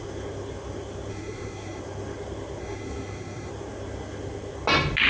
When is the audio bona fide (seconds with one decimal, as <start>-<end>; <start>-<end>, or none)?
0.0-1.1; 1.8-2.6; 3.5-5.1